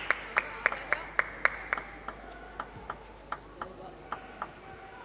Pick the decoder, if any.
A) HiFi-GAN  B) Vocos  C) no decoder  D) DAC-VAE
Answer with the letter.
C